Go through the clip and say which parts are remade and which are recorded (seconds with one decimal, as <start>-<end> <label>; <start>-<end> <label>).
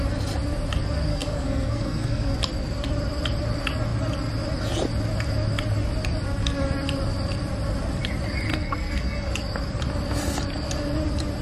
0.0-1.1 recorded; 1.1-2.4 remade; 2.4-8.5 recorded; 8.5-9.3 remade; 9.3-11.4 recorded